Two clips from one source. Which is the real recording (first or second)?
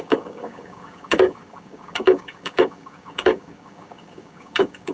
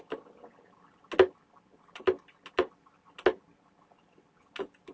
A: second